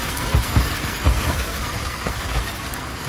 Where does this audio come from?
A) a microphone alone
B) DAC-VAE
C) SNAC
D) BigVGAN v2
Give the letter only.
C